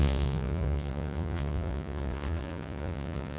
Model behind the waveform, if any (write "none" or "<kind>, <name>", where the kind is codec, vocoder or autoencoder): vocoder, Vocos